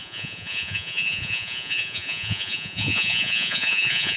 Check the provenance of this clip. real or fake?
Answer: fake